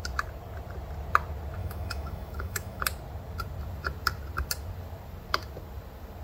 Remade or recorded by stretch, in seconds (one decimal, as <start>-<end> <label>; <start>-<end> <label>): 0.0-1.6 recorded; 1.6-2.8 remade; 2.8-6.2 recorded

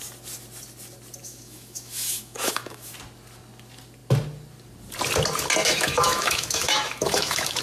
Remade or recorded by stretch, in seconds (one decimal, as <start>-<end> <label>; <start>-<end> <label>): 0.0-1.2 recorded; 1.2-2.9 remade; 2.9-5.6 recorded; 5.6-7.6 remade

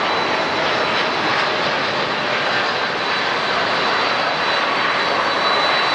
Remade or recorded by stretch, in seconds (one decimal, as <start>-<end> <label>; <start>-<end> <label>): 0.0-5.9 recorded

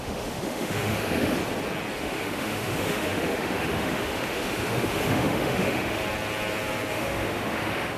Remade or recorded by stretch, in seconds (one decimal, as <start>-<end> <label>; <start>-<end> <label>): 0.0-1.4 remade; 1.4-2.0 recorded; 2.0-6.0 remade; 6.0-6.9 recorded; 6.9-8.0 remade

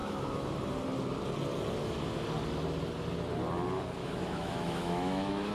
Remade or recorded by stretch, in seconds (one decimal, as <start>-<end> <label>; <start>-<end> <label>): 0.0-0.5 remade; 0.5-4.0 recorded; 4.0-5.5 remade

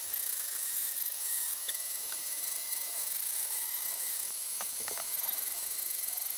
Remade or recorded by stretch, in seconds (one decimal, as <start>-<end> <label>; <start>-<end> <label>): 0.0-6.4 remade

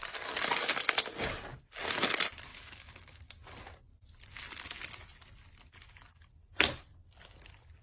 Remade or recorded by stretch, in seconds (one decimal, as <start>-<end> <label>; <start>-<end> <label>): 0.0-2.5 recorded; 2.5-3.2 remade; 3.2-7.8 recorded

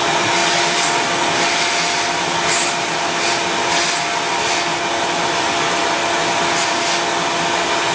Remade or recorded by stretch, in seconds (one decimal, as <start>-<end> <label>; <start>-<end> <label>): 0.0-7.9 recorded